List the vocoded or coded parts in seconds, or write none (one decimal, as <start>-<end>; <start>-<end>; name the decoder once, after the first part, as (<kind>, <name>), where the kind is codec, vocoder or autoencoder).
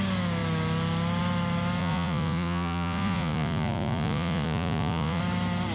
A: 1.8-5.2 (vocoder, Vocos)